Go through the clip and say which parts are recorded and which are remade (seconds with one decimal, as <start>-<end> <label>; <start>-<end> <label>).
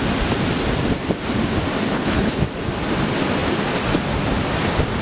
0.0-1.9 recorded; 1.9-2.4 remade; 2.4-5.0 recorded